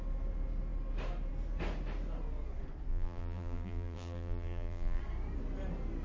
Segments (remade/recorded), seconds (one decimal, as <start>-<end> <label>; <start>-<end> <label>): 0.0-2.9 recorded; 2.9-5.0 remade; 5.0-6.0 recorded